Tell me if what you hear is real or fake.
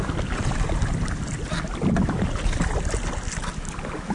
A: real